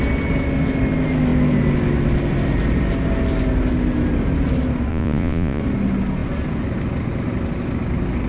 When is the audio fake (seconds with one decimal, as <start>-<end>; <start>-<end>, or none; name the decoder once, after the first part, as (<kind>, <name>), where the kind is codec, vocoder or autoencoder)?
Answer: 4.9-5.6 (vocoder, Vocos)